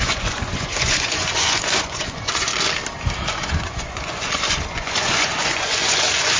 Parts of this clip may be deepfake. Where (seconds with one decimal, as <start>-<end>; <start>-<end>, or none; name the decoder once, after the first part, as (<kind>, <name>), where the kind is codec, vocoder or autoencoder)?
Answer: 0.0-2.5 (vocoder, Vocos); 3.3-6.4

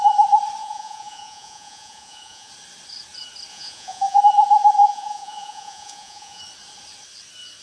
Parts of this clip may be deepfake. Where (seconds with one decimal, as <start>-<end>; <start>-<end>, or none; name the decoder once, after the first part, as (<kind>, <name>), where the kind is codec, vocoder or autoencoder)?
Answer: 0.6-2.5 (vocoder, Vocos); 3.5-4.2; 4.8-6.4

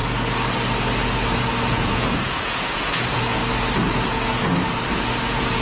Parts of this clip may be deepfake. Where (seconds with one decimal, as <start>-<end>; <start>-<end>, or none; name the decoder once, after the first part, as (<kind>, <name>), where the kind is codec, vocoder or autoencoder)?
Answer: 1.7-3.4 (vocoder, Vocos); 3.9-4.3; 4.9-5.6

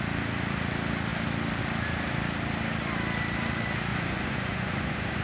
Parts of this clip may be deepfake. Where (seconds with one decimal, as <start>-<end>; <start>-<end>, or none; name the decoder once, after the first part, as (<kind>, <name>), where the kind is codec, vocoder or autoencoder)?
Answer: 3.9-5.2 (vocoder, Vocos)